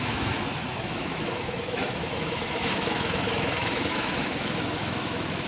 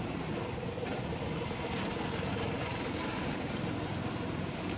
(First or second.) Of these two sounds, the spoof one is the first